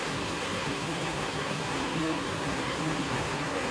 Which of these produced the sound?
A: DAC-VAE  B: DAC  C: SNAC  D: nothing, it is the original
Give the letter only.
C